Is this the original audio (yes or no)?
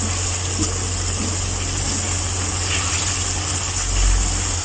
yes